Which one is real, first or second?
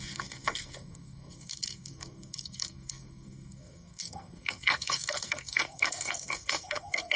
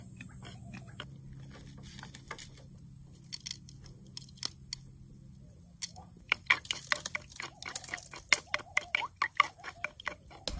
second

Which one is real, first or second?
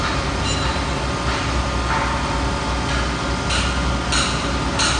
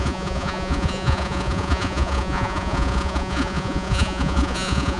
first